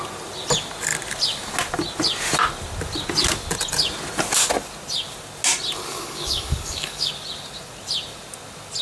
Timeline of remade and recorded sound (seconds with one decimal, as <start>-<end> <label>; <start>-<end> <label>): 0.0-5.9 recorded; 5.9-7.1 remade; 7.1-8.8 recorded